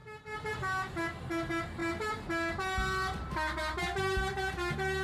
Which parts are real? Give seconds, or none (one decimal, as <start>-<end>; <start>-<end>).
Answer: 0.0-5.0